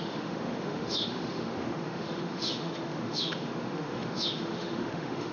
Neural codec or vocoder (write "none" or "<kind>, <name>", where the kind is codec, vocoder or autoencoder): autoencoder, DAC-VAE